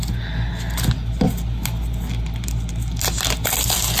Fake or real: real